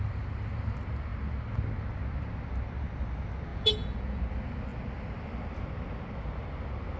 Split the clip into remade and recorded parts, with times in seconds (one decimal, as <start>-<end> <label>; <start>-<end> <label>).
0.0-3.5 recorded; 3.5-4.2 remade; 4.2-7.0 recorded